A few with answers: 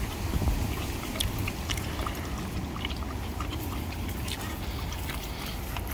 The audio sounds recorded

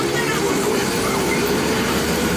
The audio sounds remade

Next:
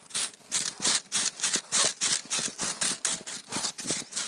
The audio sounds recorded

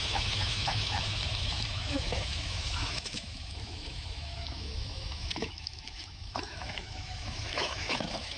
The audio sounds remade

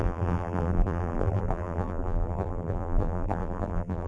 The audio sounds remade